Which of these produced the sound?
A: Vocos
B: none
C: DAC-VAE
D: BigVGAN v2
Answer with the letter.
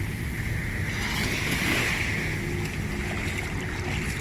B